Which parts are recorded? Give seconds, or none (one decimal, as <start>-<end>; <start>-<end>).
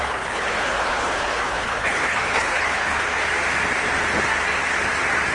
3.2-5.3